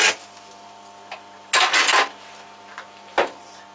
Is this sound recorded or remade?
recorded